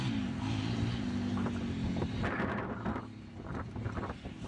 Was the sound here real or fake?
real